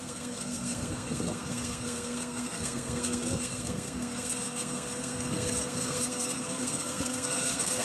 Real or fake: fake